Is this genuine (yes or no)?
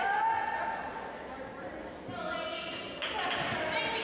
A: yes